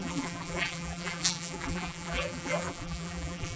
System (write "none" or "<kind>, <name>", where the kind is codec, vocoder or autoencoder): vocoder, BigVGAN v2